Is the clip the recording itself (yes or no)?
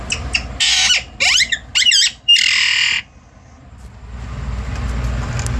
yes